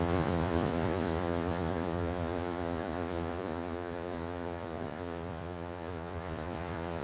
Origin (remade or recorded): remade